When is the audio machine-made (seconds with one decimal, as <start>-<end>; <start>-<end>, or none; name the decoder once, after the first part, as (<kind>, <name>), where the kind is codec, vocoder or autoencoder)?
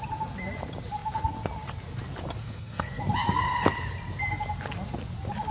2.4-3.0 (codec, SNAC)